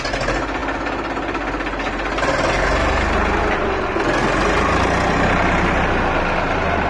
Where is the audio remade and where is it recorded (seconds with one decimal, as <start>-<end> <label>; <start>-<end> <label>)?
0.0-6.9 recorded